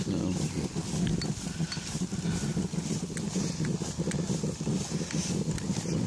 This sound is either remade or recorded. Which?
recorded